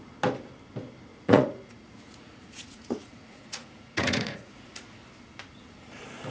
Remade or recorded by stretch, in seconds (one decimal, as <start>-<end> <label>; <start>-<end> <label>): 0.0-1.1 recorded; 1.1-4.9 remade; 4.9-6.3 recorded